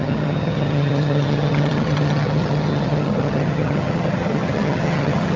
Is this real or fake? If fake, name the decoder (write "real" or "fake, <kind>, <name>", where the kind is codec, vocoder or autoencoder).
fake, vocoder, HiFi-GAN